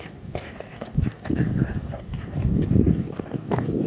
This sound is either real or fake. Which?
fake